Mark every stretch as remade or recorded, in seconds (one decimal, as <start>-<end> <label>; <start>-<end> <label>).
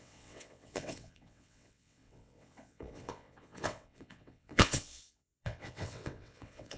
0.0-6.8 remade